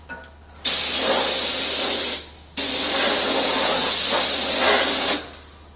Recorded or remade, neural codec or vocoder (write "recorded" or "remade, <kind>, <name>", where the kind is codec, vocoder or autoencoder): recorded